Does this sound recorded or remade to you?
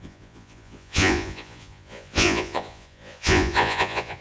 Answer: remade